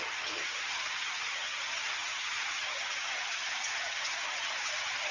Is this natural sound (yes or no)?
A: no